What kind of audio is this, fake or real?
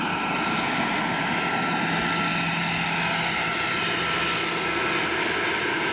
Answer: real